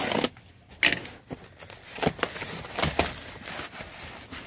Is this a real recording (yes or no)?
yes